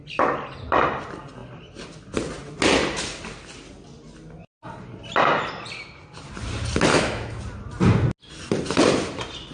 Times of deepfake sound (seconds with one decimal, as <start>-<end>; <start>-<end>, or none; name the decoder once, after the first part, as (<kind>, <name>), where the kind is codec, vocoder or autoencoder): 6.9-7.4 (autoencoder, DAC-VAE)

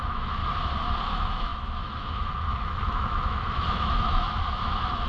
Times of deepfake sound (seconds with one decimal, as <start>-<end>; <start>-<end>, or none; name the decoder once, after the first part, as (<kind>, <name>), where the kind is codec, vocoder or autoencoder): 0.0-0.4 (autoencoder, DAC-VAE); 1.0-5.1

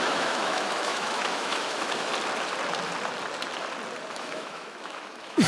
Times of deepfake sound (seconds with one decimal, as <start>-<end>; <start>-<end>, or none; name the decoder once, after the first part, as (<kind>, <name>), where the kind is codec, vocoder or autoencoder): 0.0-2.1 (autoencoder, DAC-VAE); 4.1-5.5

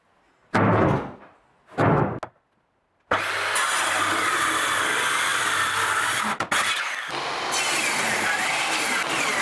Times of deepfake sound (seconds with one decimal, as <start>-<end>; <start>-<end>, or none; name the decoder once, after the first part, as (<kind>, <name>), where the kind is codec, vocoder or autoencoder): none

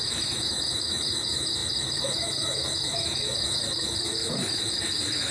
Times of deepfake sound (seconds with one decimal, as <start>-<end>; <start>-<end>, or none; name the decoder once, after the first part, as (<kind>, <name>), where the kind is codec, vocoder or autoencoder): 0.0-5.3 (autoencoder, DAC-VAE)

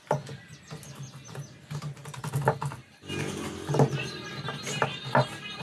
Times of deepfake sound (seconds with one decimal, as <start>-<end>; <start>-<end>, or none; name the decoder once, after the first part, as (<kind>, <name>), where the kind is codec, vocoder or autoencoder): none

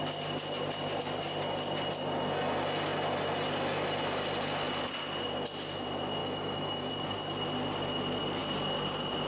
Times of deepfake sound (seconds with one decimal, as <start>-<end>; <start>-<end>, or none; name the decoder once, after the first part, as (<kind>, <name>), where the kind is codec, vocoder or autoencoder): 6.2-6.9 (autoencoder, DAC-VAE)

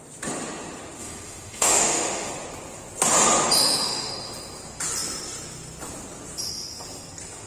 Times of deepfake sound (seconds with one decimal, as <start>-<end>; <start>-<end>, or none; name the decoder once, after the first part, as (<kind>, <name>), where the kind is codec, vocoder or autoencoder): 1.0-2.3 (autoencoder, DAC-VAE); 3.6-4.1